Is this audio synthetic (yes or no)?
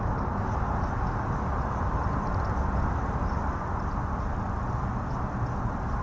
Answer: no